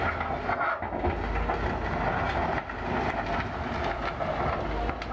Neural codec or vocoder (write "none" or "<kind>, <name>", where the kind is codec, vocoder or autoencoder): none